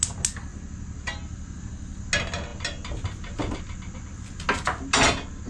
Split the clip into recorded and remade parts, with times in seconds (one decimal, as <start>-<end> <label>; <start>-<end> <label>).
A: 0.0-5.5 recorded